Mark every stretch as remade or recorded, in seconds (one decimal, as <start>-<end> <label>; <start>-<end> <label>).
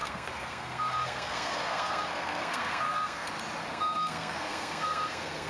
0.0-3.3 remade; 3.3-3.7 recorded; 3.7-5.5 remade